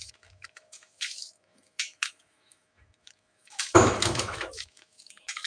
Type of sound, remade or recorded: remade